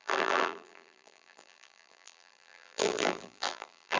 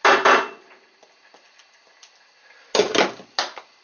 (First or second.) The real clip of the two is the second